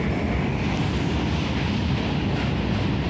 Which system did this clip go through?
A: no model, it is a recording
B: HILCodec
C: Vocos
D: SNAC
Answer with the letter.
A